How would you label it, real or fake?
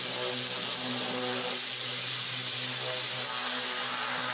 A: real